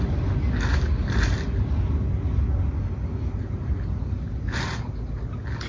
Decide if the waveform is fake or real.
real